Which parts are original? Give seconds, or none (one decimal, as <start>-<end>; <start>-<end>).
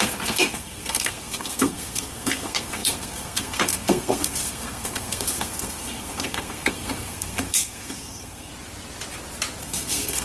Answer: 8.5-9.6